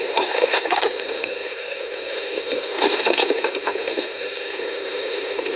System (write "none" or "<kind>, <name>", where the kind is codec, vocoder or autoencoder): codec, SNAC